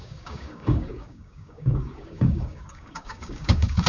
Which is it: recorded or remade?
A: remade